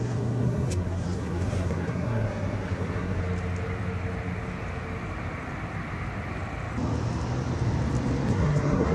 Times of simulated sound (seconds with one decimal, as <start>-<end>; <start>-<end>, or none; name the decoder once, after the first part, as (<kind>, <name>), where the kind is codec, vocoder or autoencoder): 0.0-3.2 (codec, SNAC); 8.3-8.9